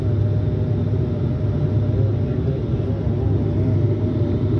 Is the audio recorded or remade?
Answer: recorded